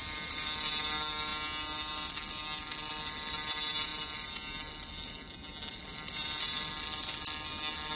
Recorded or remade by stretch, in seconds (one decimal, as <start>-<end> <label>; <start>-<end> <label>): 0.0-8.0 recorded